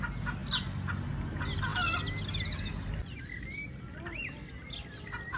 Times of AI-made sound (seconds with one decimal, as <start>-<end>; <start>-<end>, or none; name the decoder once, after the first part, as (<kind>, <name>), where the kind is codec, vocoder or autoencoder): none